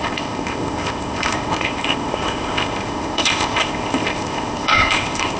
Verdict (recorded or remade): remade